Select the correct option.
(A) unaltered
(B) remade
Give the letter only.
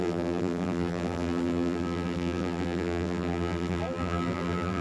B